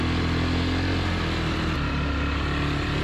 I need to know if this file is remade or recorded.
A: recorded